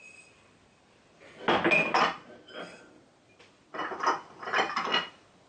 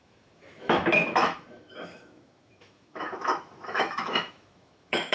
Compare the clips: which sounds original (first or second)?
first